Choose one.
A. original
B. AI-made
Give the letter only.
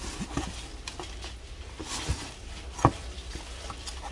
A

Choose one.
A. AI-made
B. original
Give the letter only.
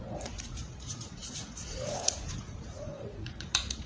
A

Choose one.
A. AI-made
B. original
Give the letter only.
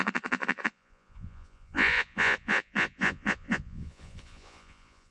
A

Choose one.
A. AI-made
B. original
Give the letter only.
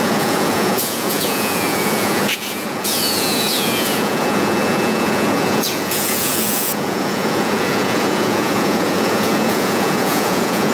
A